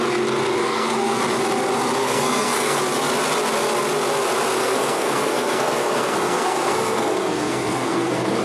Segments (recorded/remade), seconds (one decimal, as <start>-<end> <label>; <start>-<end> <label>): 0.0-0.6 recorded; 0.6-1.2 remade; 1.2-2.0 recorded; 2.0-2.8 remade; 2.8-4.6 recorded; 4.6-8.4 remade